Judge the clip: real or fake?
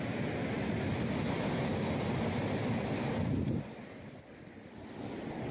real